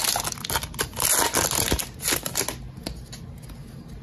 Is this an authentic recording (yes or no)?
yes